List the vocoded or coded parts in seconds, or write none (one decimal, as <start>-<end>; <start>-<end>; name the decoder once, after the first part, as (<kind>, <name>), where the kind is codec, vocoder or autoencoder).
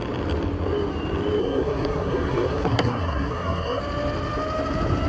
1.4-3.8 (codec, SNAC)